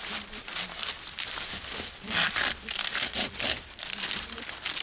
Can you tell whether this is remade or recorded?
recorded